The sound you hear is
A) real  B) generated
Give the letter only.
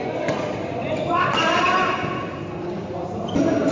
A